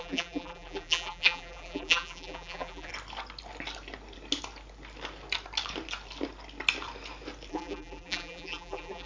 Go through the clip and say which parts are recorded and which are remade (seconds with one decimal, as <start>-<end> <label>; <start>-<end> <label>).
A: 0.0-2.9 remade; 2.9-7.5 recorded; 7.5-9.1 remade